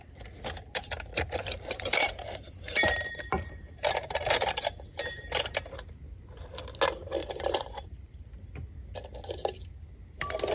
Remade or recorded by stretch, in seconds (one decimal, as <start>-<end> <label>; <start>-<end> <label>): 0.0-1.4 recorded; 1.4-5.6 remade; 5.6-7.2 recorded; 7.2-8.2 remade; 8.2-10.5 recorded